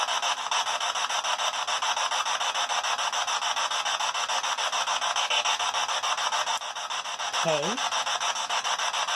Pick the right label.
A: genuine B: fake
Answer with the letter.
A